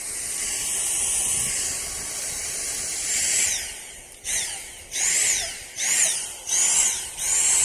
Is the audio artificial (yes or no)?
yes